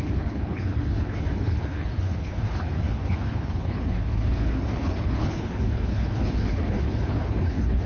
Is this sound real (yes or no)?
no